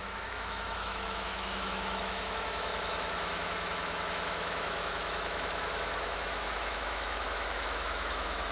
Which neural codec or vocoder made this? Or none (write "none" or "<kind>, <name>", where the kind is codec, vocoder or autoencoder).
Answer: autoencoder, DAC-VAE